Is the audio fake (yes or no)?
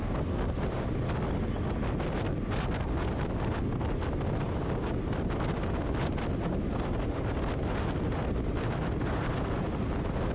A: no